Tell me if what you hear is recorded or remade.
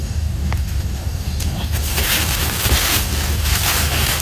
remade